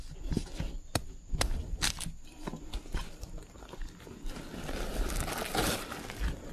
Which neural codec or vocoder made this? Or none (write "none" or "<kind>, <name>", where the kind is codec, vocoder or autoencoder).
none